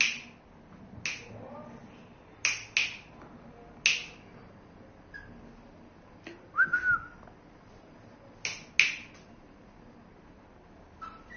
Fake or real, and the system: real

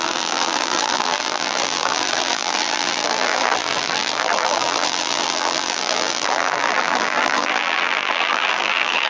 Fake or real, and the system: fake, vocoder, BigVGAN v2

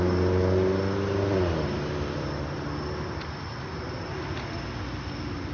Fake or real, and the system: real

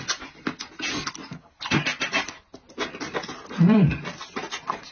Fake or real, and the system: real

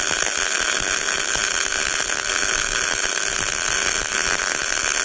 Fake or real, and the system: real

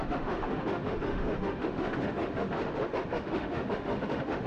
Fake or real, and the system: fake, autoencoder, DAC-VAE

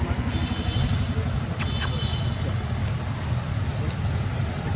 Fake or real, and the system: real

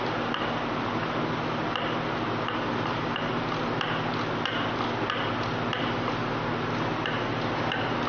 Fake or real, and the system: real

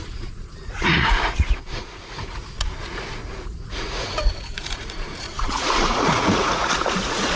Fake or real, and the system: fake, vocoder, Vocos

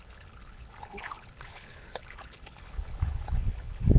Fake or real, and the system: fake, codec, HILCodec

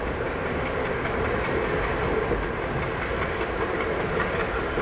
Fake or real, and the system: real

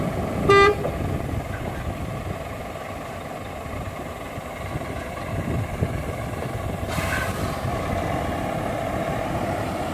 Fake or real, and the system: real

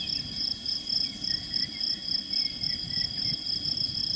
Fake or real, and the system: real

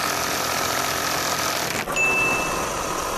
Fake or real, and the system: real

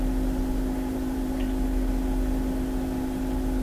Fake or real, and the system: real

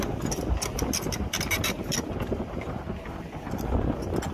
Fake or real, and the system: real